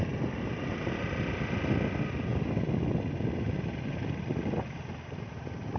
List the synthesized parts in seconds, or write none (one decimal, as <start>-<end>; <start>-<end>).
none